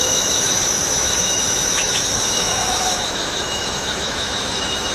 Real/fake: fake